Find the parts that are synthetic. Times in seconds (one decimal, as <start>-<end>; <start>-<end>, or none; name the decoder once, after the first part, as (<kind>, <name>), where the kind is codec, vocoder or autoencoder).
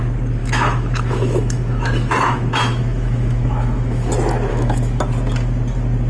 0.4-4.1 (autoencoder, DAC-VAE); 4.5-5.0